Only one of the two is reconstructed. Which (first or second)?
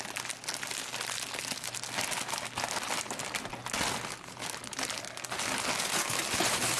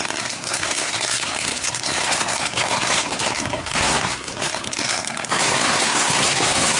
second